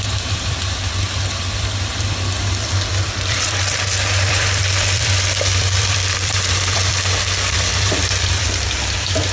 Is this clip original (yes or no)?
no